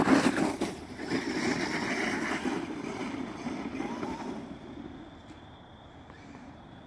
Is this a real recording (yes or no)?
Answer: yes